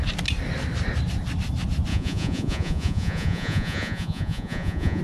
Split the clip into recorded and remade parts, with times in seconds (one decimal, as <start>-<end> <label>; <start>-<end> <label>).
0.0-1.9 recorded; 1.9-5.0 remade

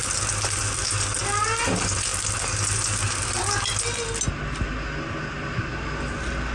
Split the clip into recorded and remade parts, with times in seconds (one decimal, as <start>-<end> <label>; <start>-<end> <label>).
0.0-6.5 recorded

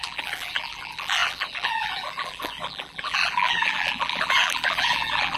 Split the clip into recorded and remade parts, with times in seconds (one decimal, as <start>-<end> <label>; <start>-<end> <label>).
0.0-5.4 remade

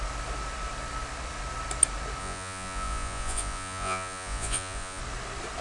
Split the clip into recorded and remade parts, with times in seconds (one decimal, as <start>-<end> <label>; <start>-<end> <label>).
0.0-2.2 recorded; 2.2-5.0 remade; 5.0-5.6 recorded

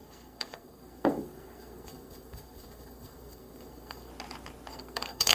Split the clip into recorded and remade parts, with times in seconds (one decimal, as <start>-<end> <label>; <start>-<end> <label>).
0.0-4.1 remade; 4.1-4.7 recorded; 4.7-5.3 remade

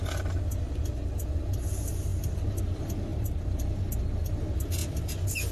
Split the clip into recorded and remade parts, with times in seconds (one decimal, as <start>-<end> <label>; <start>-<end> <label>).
0.0-2.1 recorded; 2.1-2.6 remade; 2.6-3.1 recorded; 3.1-3.8 remade; 3.8-5.5 recorded

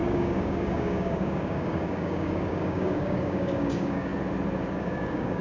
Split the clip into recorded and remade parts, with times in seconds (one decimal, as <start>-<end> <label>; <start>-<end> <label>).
0.0-4.1 remade; 4.1-4.8 recorded; 4.8-5.4 remade

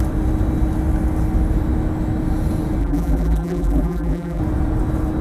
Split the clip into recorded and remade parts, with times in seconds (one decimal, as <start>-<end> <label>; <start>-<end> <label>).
0.0-2.8 recorded; 2.8-4.4 remade; 4.4-5.2 recorded